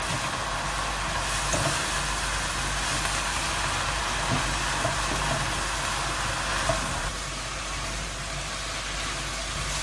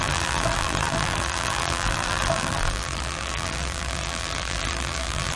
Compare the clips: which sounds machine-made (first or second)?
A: second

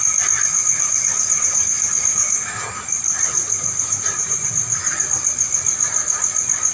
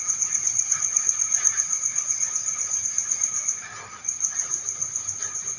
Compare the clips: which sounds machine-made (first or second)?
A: second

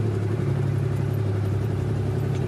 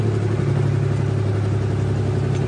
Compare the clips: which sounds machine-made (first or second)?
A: first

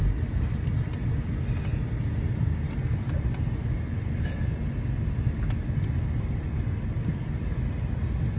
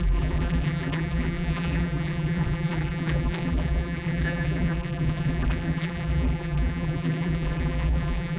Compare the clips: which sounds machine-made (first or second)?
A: second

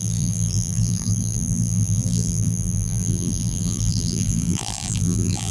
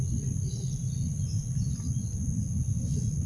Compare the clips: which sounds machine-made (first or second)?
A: first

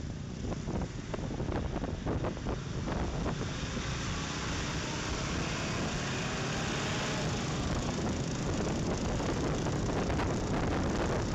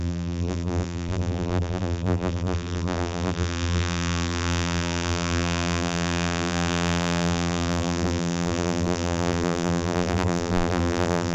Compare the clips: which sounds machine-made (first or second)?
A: second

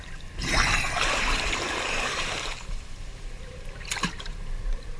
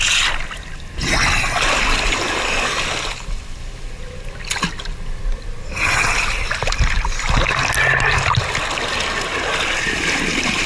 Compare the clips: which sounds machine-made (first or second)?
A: first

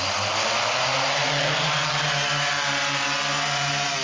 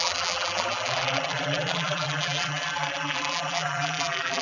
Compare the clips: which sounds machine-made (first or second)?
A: second